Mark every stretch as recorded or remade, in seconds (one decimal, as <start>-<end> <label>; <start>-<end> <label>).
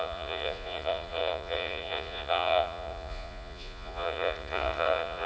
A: 0.0-5.3 remade